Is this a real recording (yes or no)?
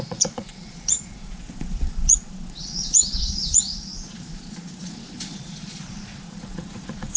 no